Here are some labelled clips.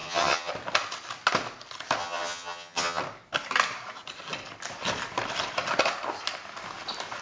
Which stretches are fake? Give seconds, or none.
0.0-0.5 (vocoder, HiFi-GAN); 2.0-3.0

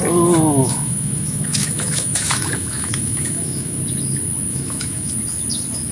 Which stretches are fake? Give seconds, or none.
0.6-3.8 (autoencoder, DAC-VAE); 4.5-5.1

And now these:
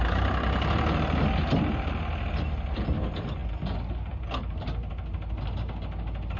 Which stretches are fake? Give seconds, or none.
none